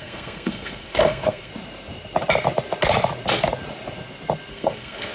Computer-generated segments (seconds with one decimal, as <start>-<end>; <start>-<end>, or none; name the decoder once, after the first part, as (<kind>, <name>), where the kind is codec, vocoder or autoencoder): 0.0-1.5 (codec, SNAC); 4.5-5.1